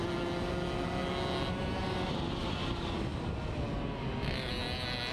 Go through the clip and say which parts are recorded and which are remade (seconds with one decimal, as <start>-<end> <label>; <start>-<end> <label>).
0.0-5.1 recorded